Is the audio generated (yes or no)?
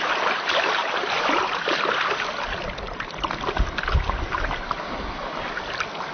no